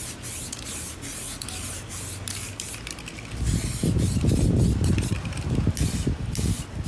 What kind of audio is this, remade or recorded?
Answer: recorded